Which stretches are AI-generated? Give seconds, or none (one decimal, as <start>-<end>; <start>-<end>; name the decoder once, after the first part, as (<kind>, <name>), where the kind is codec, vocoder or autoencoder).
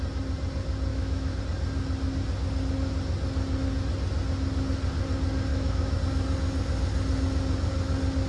0.9-1.4 (autoencoder, DAC-VAE); 5.5-6.0